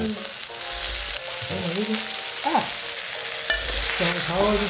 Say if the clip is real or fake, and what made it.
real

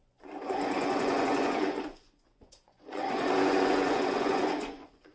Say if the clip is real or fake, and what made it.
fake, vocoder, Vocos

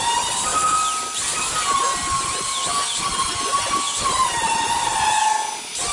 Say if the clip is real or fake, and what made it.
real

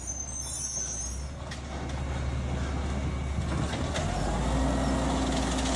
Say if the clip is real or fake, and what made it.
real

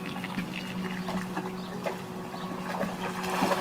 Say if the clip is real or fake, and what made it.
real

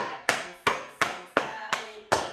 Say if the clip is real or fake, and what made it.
fake, codec, SNAC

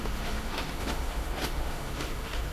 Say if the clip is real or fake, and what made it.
fake, autoencoder, DAC-VAE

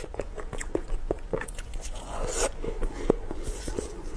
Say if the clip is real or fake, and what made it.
fake, vocoder, Vocos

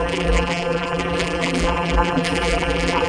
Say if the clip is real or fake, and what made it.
fake, vocoder, BigVGAN v2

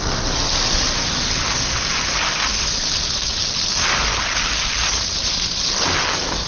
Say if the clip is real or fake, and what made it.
real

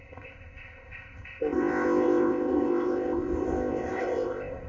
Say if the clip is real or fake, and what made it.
fake, codec, ZipCodec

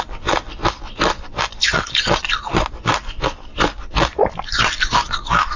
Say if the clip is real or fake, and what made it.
fake, vocoder, BigVGAN v2